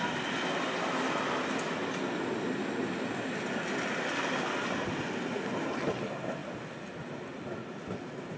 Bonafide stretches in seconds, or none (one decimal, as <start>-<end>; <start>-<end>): 0.0-8.4